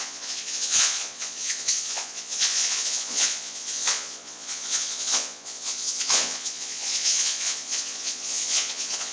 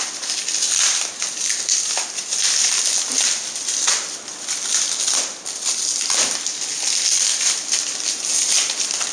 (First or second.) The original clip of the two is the second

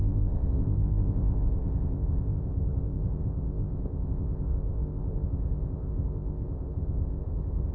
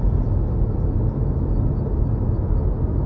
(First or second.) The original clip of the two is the second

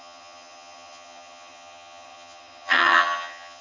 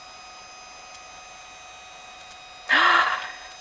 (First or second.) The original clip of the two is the second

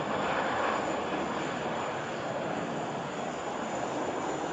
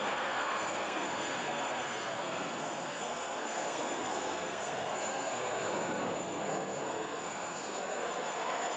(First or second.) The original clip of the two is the first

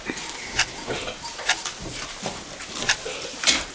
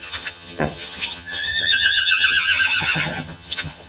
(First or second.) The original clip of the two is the first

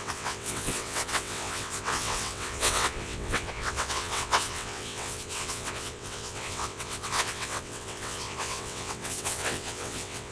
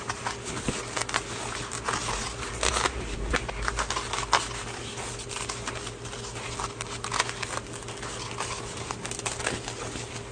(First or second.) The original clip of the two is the second